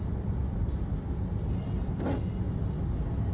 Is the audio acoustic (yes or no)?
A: yes